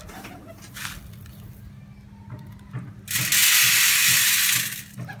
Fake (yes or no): no